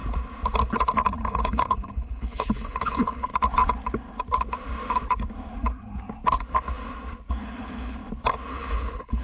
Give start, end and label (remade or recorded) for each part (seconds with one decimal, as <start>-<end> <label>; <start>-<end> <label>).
0.0-1.3 recorded; 1.3-3.3 remade; 3.3-7.4 recorded; 7.4-8.0 remade; 8.0-8.5 recorded; 8.5-9.2 remade